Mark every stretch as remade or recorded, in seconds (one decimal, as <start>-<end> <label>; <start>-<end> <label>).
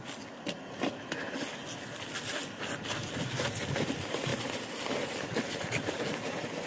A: 0.0-4.3 recorded; 4.3-5.9 remade; 5.9-6.7 recorded